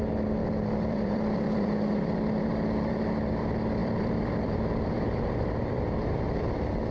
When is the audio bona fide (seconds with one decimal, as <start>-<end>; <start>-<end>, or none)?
0.0-0.4; 2.9-3.8; 6.4-6.9